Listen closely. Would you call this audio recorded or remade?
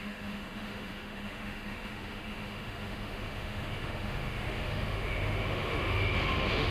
remade